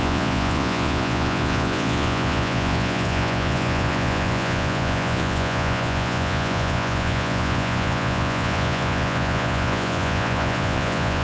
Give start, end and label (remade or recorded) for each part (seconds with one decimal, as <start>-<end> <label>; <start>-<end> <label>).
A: 0.0-11.2 remade